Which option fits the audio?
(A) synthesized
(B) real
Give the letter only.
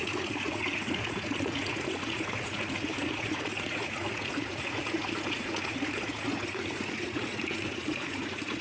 A